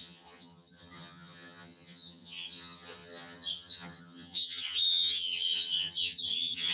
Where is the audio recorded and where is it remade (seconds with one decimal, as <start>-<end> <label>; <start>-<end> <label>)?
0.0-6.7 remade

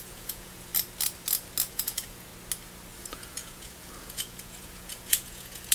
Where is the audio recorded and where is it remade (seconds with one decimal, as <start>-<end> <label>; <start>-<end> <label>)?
0.0-0.7 remade; 0.7-1.7 recorded; 1.7-2.3 remade; 2.3-3.0 recorded; 3.0-5.7 remade

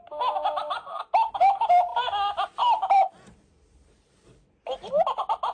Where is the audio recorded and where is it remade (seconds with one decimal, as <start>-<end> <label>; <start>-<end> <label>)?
0.0-5.5 recorded

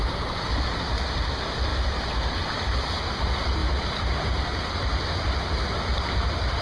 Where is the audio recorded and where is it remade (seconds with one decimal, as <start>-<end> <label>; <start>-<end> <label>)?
0.0-6.6 recorded